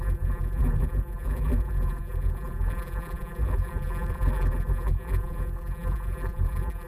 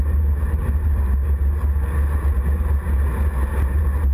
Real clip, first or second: second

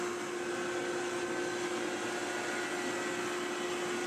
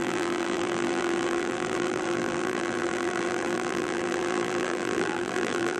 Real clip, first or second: first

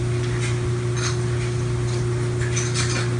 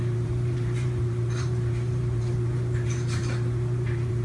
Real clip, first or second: first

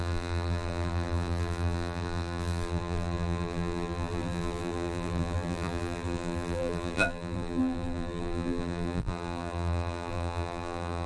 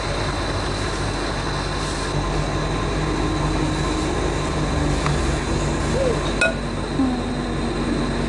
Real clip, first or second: second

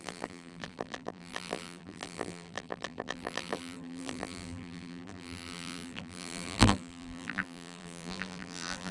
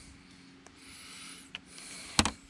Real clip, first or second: second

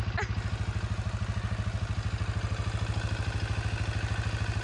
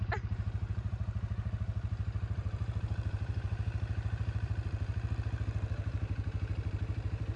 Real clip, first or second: first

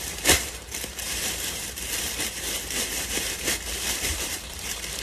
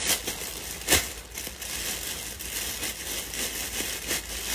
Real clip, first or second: second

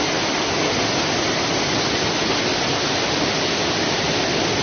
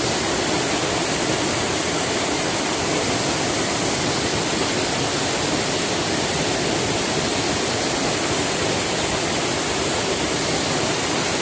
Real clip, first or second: first